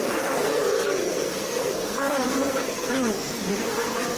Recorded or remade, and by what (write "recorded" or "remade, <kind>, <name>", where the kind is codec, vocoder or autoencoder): remade, codec, SNAC